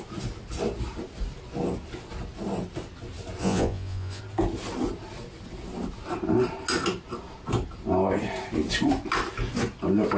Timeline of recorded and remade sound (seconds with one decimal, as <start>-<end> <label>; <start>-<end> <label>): 0.0-3.4 recorded; 3.4-4.2 remade; 4.2-10.2 recorded